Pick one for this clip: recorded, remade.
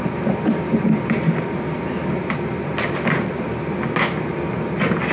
recorded